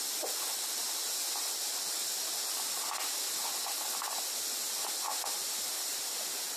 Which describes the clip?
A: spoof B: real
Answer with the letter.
B